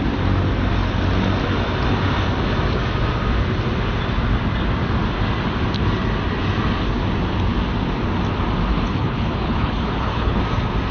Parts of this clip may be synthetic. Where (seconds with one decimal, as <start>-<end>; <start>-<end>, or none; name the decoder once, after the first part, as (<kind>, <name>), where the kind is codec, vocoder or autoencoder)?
8.7-10.4 (codec, HILCodec)